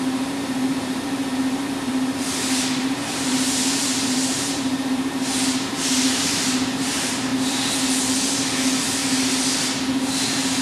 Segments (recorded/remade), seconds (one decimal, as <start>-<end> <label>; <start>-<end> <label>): 0.0-7.3 remade; 7.3-8.8 recorded; 8.8-10.6 remade